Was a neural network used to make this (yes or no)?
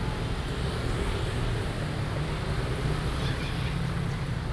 no